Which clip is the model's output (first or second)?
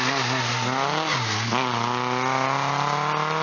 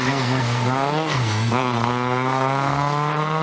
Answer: second